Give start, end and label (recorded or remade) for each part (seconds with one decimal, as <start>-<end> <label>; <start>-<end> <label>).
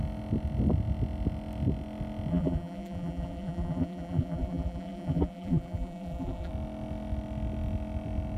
0.0-2.3 recorded; 2.3-6.5 remade; 6.5-8.4 recorded